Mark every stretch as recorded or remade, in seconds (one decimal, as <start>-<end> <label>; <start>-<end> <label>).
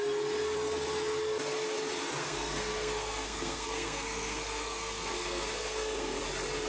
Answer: 0.0-2.2 recorded; 2.2-6.2 remade; 6.2-6.7 recorded